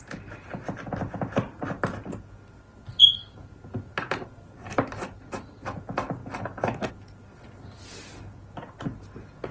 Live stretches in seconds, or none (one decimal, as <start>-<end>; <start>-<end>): 0.0-9.5

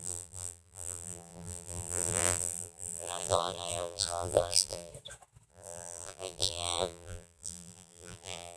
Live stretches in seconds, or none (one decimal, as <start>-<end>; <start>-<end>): 4.9-5.5

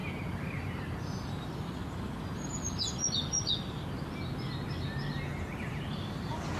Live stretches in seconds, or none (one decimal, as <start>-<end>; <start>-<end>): 0.0-6.6

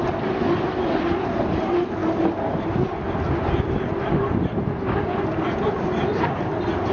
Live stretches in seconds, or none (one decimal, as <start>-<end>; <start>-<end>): 0.0-6.9